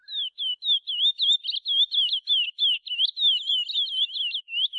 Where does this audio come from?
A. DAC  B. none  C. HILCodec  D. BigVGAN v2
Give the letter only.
B